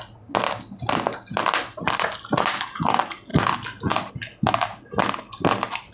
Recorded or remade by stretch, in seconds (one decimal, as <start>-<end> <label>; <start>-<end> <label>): 0.0-5.9 recorded